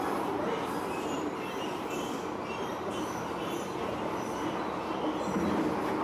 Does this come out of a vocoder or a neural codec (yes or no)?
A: yes